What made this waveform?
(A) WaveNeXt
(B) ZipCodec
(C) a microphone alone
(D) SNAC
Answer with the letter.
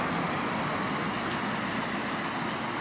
C